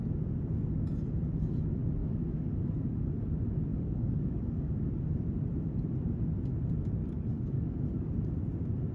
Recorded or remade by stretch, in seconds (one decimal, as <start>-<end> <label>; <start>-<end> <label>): 0.0-2.0 recorded; 2.0-3.1 remade; 3.1-3.7 recorded; 3.7-4.7 remade; 4.7-7.0 recorded; 7.0-8.1 remade; 8.1-8.9 recorded